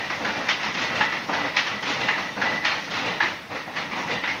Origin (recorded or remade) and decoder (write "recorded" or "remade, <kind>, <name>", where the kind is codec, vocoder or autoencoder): recorded